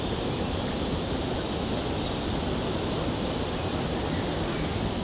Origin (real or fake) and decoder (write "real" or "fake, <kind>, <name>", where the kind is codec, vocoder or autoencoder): real